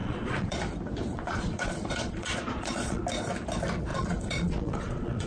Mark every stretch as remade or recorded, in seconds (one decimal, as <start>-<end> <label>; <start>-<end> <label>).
0.0-0.6 remade; 0.6-1.1 recorded; 1.1-3.0 remade; 3.0-3.9 recorded; 3.9-5.3 remade